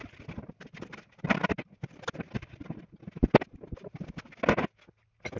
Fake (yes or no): no